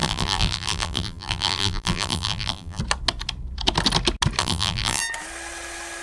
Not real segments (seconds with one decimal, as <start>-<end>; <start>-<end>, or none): 0.0-2.8; 4.4-5.0